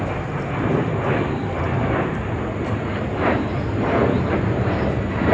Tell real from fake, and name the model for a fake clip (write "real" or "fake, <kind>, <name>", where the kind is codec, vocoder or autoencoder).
real